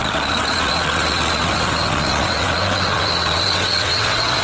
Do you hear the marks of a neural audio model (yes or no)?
yes